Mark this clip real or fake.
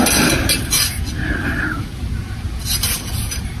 real